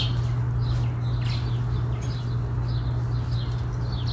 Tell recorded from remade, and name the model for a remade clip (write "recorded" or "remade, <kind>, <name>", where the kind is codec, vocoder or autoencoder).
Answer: recorded